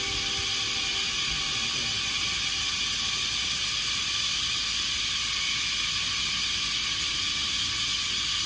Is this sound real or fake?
real